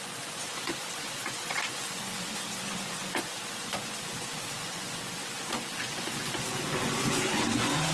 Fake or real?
fake